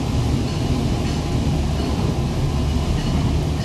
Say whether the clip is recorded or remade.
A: recorded